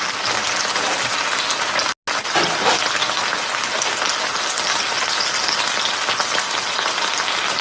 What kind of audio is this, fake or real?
real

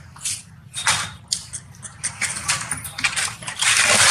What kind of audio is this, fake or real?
real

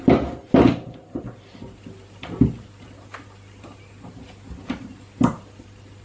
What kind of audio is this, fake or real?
real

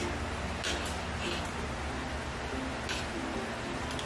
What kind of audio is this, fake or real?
real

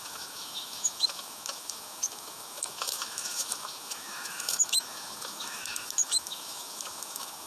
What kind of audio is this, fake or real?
fake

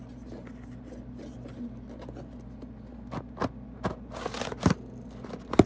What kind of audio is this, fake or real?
real